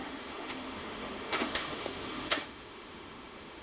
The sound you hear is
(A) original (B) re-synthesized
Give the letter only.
B